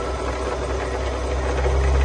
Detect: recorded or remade recorded